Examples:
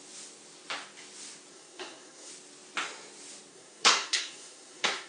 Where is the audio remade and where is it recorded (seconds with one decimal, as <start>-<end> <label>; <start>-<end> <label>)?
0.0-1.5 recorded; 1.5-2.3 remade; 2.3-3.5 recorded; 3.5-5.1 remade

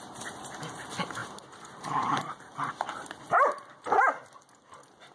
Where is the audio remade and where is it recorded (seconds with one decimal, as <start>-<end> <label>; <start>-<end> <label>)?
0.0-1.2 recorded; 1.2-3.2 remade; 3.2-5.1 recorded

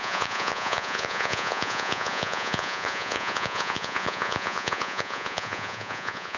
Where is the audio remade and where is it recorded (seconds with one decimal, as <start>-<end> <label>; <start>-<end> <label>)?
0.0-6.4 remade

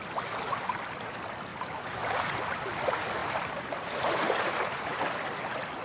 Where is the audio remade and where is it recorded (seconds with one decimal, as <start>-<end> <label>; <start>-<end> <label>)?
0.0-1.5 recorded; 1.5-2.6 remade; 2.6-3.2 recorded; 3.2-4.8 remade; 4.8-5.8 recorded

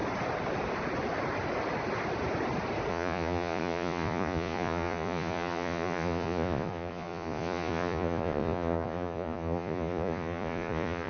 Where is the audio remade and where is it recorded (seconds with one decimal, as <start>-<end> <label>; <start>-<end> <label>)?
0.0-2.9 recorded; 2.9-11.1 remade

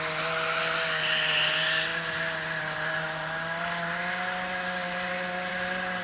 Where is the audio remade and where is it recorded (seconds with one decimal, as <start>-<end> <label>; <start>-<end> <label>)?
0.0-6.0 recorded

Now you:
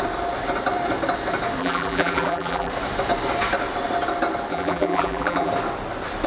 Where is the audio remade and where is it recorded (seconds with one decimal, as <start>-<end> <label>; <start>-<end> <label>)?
0.0-1.6 recorded; 1.6-2.7 remade; 2.7-4.5 recorded; 4.5-5.5 remade; 5.5-6.3 recorded